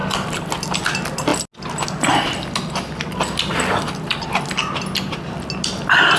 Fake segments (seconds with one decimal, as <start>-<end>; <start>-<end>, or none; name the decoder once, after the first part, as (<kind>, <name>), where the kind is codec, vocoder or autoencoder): none